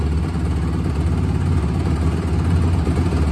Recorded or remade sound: recorded